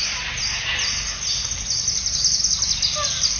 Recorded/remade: recorded